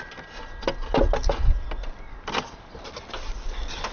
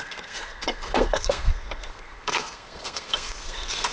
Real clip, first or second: first